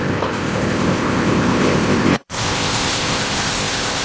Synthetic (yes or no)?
yes